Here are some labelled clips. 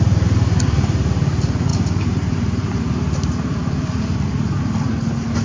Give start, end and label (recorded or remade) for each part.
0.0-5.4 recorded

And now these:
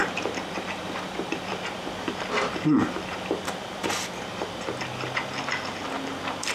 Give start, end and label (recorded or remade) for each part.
0.0-6.5 recorded

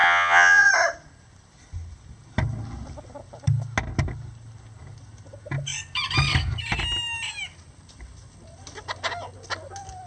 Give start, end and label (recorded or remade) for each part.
0.0-0.7 remade; 0.7-10.1 recorded

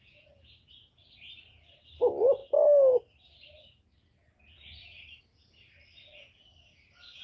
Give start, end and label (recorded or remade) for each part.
0.0-7.2 recorded